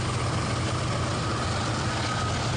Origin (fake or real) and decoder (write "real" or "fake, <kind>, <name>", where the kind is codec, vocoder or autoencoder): real